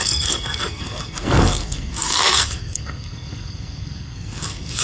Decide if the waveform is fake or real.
fake